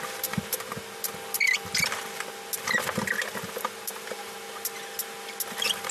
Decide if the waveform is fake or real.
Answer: real